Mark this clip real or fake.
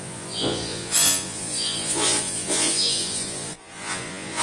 fake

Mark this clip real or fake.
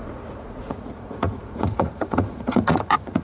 fake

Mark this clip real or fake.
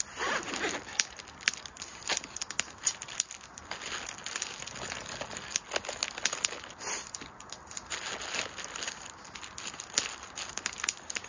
real